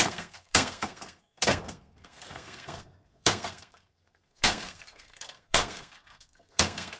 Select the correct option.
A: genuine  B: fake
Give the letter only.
B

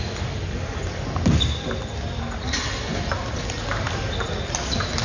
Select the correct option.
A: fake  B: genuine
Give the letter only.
B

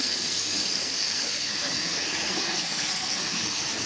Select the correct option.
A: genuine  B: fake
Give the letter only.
B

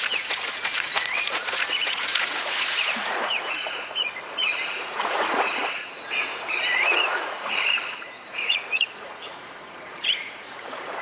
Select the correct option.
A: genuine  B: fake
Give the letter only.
B